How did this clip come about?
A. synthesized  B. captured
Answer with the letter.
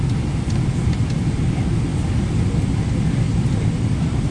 B